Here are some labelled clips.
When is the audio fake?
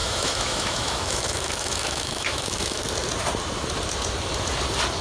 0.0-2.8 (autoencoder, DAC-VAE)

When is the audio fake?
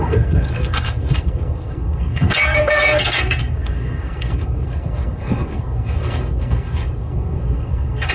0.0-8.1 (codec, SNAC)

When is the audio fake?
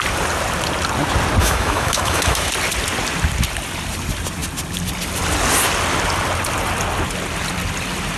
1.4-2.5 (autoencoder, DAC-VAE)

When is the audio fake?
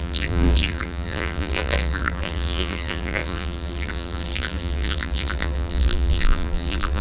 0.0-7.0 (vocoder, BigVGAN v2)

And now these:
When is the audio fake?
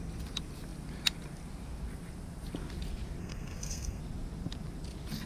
3.2-4.0 (codec, SNAC)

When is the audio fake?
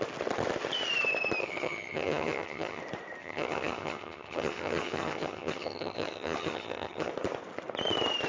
1.4-2.8 (vocoder, HiFi-GAN); 3.2-7.1